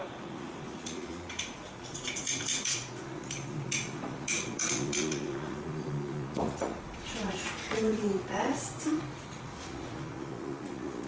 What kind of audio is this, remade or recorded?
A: remade